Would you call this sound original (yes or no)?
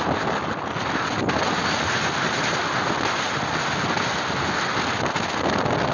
yes